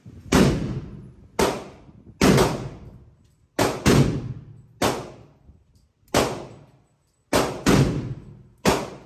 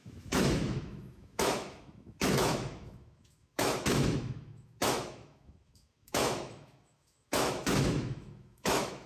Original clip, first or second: first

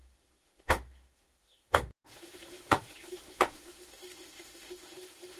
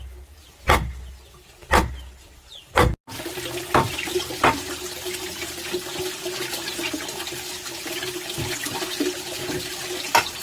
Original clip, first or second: second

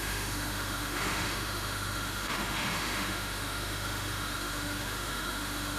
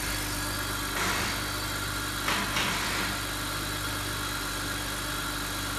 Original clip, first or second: second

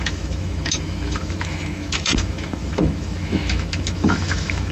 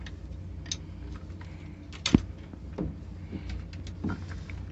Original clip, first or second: second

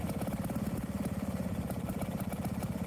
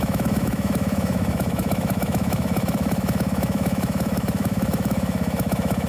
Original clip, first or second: first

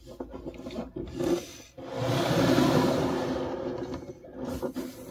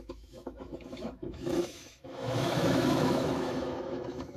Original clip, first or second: first